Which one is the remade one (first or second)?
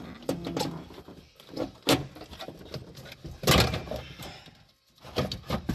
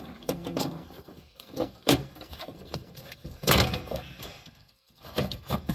second